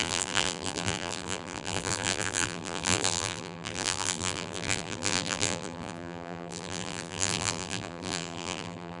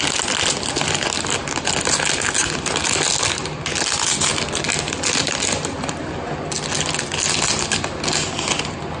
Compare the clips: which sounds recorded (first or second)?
second